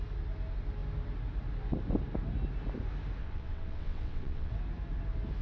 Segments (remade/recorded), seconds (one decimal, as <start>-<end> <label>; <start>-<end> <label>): 0.0-3.2 recorded; 3.2-4.5 remade; 4.5-5.4 recorded